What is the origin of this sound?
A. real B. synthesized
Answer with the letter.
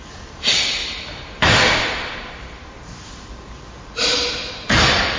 B